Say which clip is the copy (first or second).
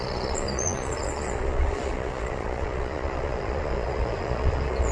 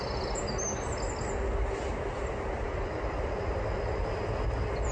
first